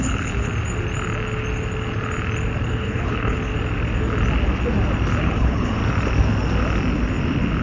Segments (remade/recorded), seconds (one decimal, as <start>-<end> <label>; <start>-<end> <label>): 0.0-0.5 remade; 0.5-2.7 recorded; 2.7-3.5 remade; 3.5-5.2 recorded; 5.2-5.8 remade; 5.8-7.6 recorded